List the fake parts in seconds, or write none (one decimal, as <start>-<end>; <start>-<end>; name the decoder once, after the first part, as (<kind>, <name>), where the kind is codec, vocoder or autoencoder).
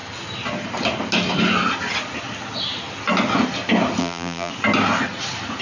4.0-4.5 (vocoder, BigVGAN v2)